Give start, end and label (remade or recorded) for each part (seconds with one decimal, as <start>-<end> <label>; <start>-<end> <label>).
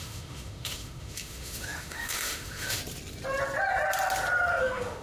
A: 0.0-2.8 remade; 2.8-4.6 recorded; 4.6-5.0 remade